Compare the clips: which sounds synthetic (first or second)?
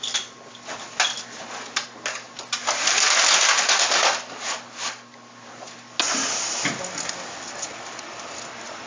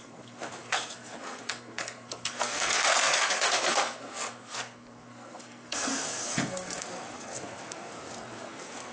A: second